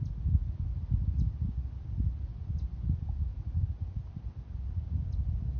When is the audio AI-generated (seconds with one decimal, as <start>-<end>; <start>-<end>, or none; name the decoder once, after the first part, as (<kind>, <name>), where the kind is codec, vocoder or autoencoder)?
none